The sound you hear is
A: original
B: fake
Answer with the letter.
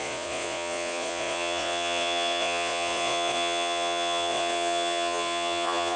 B